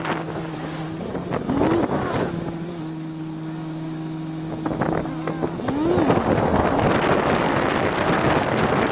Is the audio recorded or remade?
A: recorded